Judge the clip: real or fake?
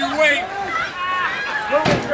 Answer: real